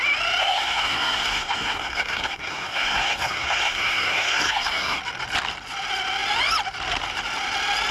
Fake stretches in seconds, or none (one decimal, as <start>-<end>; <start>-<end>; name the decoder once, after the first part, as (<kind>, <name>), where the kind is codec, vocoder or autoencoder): 0.4-5.0 (codec, SNAC)